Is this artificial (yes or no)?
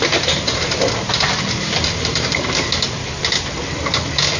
no